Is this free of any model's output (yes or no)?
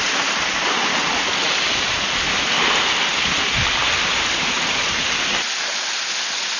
yes